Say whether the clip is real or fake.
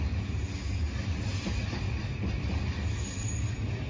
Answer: real